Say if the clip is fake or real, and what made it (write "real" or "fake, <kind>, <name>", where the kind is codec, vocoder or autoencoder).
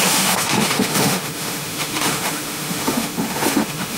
fake, autoencoder, DAC-VAE